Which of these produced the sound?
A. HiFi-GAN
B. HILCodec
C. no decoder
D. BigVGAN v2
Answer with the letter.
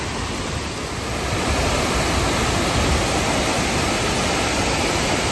C